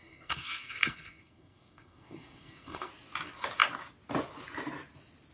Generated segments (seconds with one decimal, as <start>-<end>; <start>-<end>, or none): 0.0-2.9